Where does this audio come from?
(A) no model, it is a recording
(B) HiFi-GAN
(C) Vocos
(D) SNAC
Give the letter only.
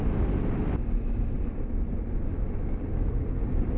A